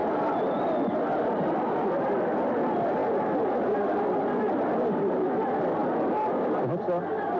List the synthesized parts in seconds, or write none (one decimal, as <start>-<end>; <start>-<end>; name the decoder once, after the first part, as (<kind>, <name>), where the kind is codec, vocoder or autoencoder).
none